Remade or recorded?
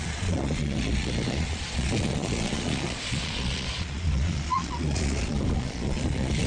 remade